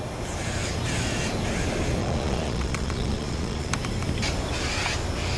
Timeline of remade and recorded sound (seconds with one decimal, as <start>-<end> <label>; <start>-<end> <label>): 0.0-2.0 recorded; 2.0-3.7 remade; 3.7-5.4 recorded